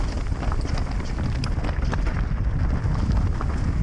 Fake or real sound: real